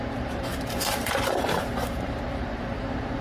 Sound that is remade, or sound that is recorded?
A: remade